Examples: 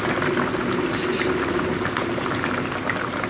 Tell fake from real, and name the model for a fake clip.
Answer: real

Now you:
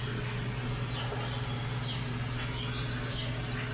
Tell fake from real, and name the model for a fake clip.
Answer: real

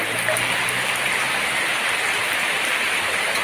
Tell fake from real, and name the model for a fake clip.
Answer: real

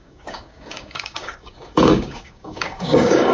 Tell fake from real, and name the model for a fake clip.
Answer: fake, codec, DAC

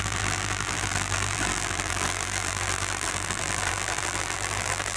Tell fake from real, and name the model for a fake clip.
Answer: fake, vocoder, BigVGAN v2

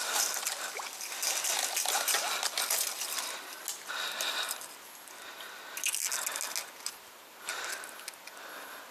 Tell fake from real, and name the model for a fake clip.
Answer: real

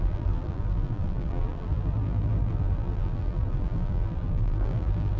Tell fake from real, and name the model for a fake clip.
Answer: fake, vocoder, BigVGAN v2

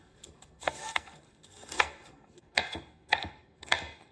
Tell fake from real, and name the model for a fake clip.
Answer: fake, codec, SNAC